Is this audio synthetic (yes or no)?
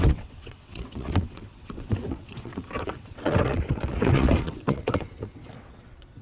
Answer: yes